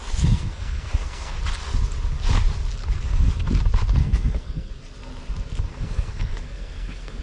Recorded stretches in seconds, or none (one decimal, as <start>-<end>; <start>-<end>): 1.4-2.8; 3.3-4.0; 4.7-5.7